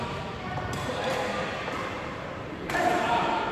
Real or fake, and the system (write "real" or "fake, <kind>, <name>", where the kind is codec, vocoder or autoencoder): fake, vocoder, BigVGAN v2